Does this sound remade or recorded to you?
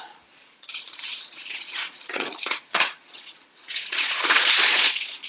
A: remade